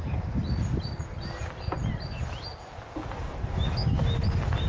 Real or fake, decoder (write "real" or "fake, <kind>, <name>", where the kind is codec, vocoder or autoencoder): real